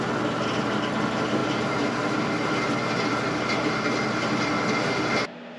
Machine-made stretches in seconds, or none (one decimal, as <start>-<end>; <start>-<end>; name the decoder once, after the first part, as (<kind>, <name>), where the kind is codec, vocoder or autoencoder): none